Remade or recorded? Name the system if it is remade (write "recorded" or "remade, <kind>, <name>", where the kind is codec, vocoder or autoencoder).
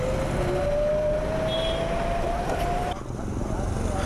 recorded